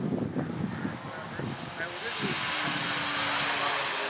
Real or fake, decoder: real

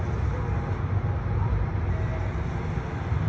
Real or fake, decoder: real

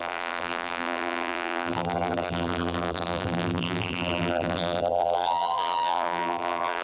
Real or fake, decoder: fake, vocoder, BigVGAN v2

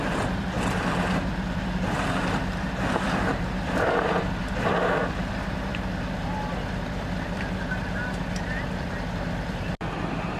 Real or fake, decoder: fake, vocoder, BigVGAN v2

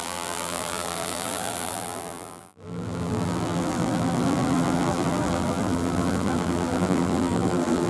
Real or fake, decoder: fake, vocoder, BigVGAN v2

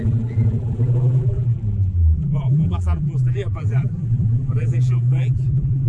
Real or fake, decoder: fake, vocoder, BigVGAN v2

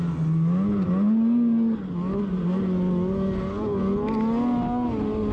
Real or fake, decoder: real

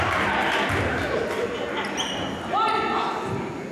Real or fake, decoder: real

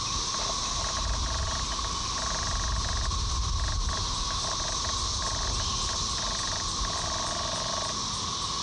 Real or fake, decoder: real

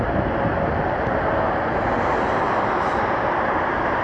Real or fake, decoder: real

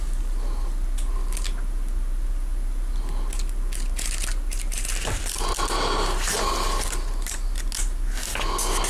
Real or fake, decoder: real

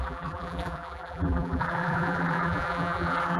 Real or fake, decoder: fake, vocoder, BigVGAN v2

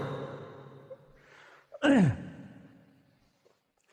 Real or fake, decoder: real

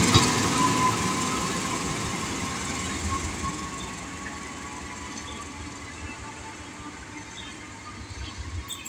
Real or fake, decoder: real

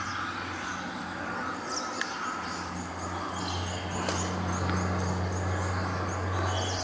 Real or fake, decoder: real